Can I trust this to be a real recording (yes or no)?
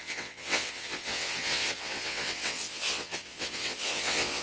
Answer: no